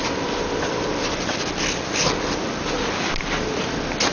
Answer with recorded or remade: recorded